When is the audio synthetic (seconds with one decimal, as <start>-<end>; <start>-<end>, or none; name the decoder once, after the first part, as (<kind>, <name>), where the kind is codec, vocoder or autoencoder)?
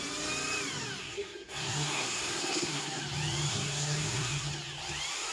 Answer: 1.0-3.0 (codec, SNAC); 3.5-4.5